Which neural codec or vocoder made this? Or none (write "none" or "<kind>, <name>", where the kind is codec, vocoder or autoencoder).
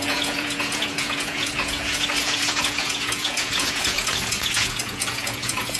vocoder, Vocos